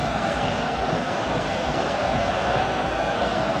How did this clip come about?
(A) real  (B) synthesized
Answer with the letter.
B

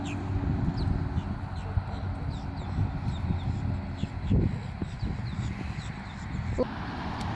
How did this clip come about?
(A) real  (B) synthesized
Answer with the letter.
A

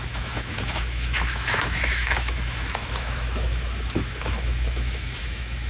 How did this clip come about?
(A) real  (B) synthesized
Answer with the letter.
B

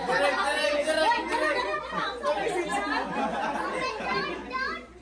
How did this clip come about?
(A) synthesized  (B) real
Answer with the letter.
B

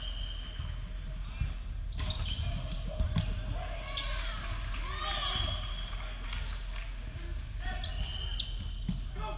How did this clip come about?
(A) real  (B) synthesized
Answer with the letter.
A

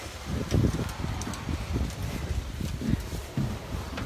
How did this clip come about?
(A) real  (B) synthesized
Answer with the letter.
A